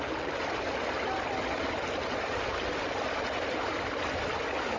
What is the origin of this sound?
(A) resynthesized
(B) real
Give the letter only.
B